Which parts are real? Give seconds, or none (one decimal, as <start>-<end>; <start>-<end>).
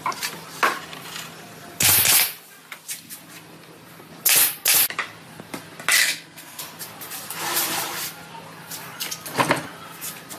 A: 0.0-6.0; 6.6-10.4